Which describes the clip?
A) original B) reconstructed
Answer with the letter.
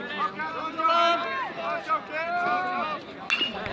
A